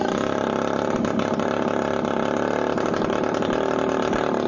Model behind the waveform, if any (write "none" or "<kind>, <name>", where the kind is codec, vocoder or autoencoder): none